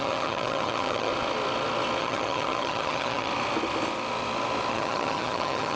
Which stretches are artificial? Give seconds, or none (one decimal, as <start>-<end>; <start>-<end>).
0.0-1.1; 2.0-3.3; 4.7-5.8